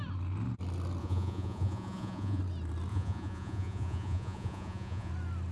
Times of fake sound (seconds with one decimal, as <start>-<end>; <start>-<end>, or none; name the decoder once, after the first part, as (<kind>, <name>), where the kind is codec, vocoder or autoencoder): 1.0-2.4 (vocoder, Vocos); 2.9-5.1